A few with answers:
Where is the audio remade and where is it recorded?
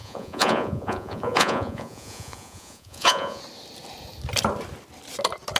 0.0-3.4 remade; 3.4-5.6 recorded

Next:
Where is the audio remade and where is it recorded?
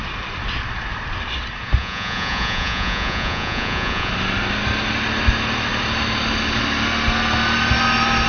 0.0-1.8 recorded; 1.8-4.1 remade; 4.1-8.3 recorded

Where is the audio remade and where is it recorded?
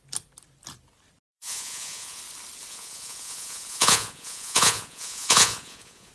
0.0-1.3 recorded; 1.3-2.2 remade; 2.2-2.7 recorded; 2.7-6.1 remade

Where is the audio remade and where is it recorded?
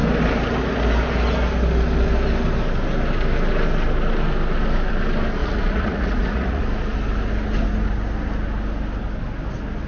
0.0-5.4 recorded; 5.4-6.6 remade; 6.6-9.9 recorded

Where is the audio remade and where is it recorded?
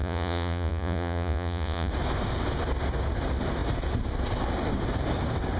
0.0-1.9 remade; 1.9-5.6 recorded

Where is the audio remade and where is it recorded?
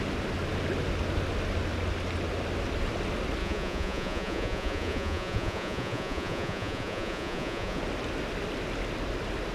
0.0-3.4 recorded; 3.4-7.8 remade; 7.8-9.5 recorded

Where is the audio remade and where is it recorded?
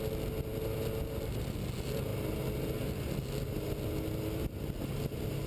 0.0-5.5 recorded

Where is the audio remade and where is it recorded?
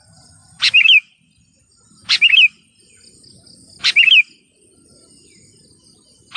0.0-6.4 recorded